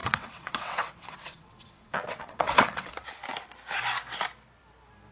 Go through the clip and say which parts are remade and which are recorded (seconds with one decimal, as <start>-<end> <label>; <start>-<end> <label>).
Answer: 0.0-2.9 remade; 2.9-5.1 recorded